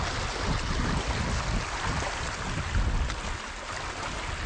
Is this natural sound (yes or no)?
yes